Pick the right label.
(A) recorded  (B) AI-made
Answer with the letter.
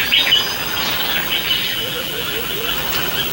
B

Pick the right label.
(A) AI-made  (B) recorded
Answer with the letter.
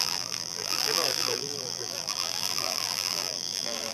A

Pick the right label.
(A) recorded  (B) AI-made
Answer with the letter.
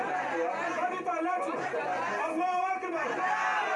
A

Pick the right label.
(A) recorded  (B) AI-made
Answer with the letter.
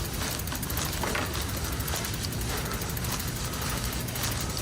A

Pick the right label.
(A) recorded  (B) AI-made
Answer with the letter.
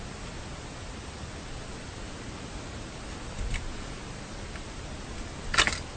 A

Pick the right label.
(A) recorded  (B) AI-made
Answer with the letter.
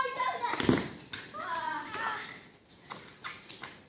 A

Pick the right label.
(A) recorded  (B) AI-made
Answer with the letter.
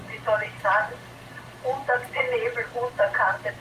A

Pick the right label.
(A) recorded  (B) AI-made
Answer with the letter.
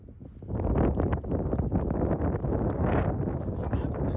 A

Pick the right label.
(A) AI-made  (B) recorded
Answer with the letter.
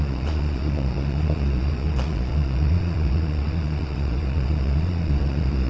A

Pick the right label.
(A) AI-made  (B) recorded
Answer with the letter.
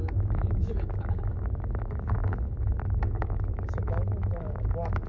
A